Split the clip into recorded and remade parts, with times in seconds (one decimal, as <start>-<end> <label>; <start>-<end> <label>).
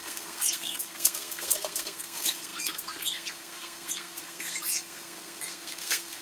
0.0-6.2 remade